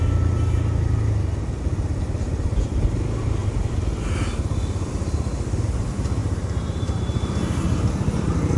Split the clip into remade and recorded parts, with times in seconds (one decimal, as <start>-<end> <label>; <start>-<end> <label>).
0.0-6.2 recorded; 6.2-8.6 remade